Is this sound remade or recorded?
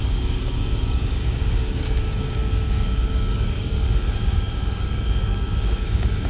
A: remade